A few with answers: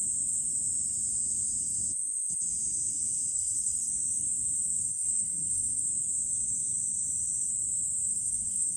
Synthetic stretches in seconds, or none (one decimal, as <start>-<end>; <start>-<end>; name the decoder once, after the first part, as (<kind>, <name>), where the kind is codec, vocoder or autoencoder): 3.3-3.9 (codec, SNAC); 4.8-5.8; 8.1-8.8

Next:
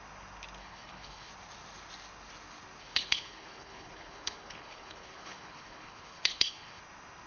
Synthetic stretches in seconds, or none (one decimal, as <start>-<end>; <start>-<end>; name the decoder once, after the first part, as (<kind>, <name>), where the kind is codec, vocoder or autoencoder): 0.6-1.3 (codec, HILCodec); 2.8-6.8

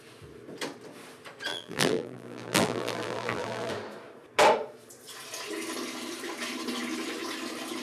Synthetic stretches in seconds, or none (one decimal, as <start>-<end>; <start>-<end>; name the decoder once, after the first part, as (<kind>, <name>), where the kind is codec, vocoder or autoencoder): 1.5-3.7 (vocoder, BigVGAN v2)